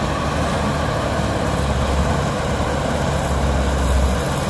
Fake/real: real